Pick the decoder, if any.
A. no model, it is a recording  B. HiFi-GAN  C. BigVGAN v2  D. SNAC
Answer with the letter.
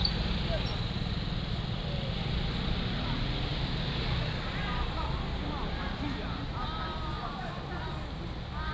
A